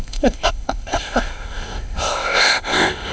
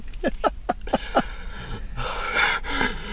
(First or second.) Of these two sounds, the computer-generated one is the first